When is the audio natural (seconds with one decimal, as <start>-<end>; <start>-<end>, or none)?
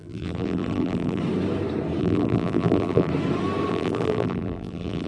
1.2-2.0; 3.1-3.7